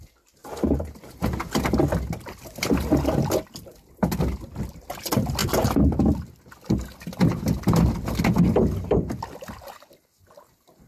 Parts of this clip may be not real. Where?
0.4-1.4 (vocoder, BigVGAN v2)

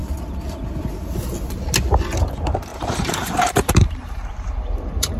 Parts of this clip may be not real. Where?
2.7-5.2 (vocoder, BigVGAN v2)

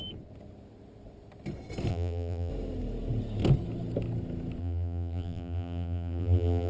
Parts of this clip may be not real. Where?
1.9-2.5 (vocoder, BigVGAN v2); 4.6-6.7

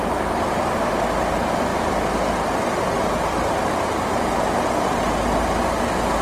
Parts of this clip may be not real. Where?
none

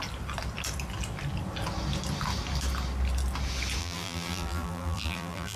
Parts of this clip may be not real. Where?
3.8-5.6 (vocoder, BigVGAN v2)

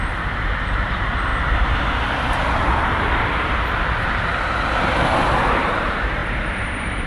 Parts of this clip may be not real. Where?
0.0-1.3 (vocoder, BigVGAN v2); 5.6-7.1

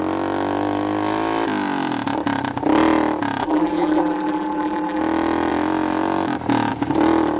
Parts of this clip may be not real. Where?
3.4-5.0 (vocoder, BigVGAN v2)

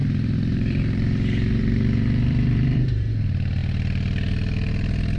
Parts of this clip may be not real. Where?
0.0-3.1 (vocoder, BigVGAN v2)